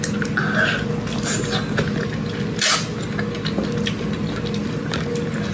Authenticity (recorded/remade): recorded